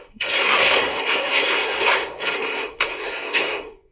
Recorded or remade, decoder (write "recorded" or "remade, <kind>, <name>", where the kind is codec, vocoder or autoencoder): remade, codec, SNAC